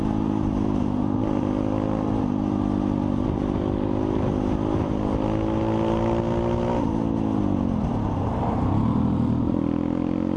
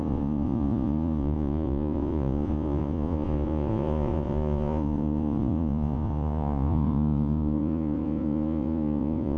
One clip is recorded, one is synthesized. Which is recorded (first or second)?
first